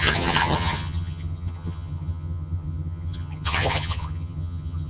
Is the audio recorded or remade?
remade